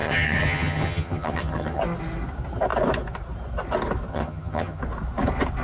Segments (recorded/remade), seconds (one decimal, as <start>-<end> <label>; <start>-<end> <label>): 0.0-1.8 remade; 1.8-4.1 recorded; 4.1-4.8 remade; 4.8-5.6 recorded